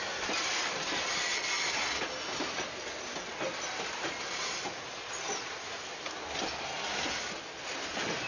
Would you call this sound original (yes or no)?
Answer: yes